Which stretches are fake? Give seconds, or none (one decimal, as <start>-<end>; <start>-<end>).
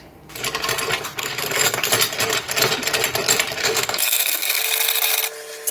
1.2-1.9; 3.6-4.6